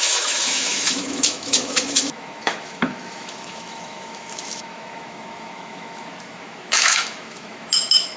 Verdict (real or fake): fake